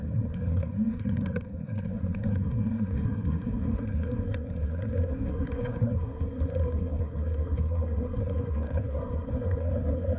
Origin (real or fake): fake